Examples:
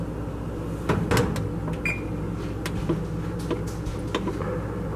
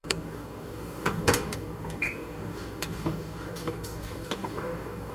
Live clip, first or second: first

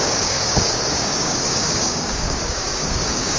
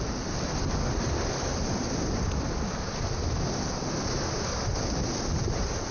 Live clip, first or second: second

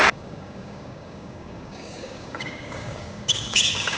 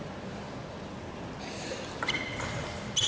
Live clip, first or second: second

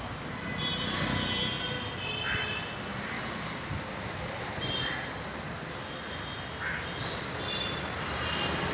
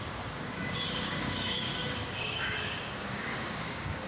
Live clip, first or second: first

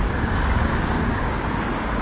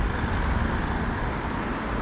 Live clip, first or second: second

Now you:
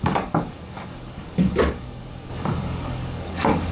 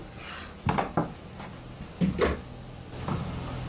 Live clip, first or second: second